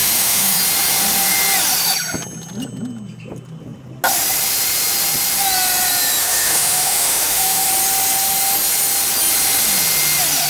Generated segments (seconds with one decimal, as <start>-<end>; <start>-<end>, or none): 0.0-0.6; 6.2-7.7